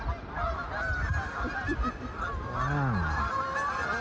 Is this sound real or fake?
real